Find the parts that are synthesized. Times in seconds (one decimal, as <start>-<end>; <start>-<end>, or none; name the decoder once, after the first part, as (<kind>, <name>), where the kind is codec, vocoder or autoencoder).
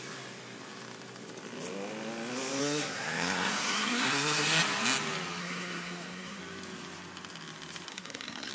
2.6-4.6 (codec, SNAC); 5.4-6.4; 7.9-8.5